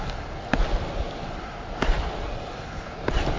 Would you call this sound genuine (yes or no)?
yes